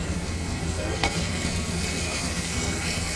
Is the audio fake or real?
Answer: fake